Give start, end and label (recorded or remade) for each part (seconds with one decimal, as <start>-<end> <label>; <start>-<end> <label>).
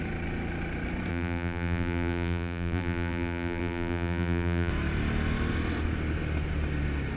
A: 0.0-1.1 recorded; 1.1-4.7 remade; 4.7-7.2 recorded